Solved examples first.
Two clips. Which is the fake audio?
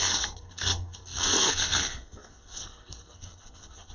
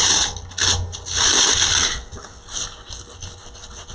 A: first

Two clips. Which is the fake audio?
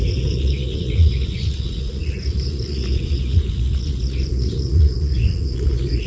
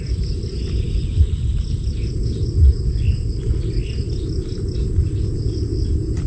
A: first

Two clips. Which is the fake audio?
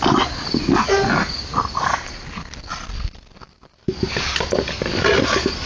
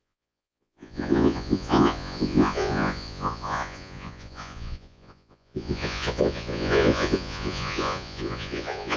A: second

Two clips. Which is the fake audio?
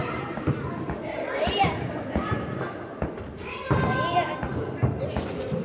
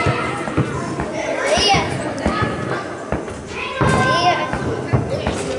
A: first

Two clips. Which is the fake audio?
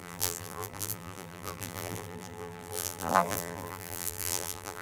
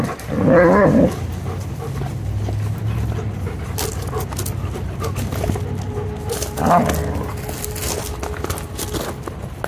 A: first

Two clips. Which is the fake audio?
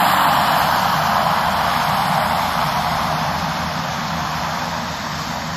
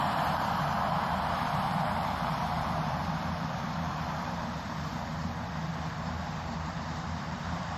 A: second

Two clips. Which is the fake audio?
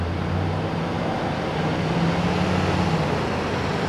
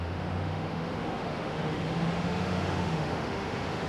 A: second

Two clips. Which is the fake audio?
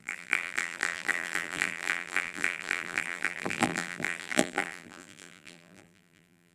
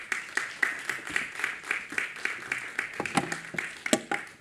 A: first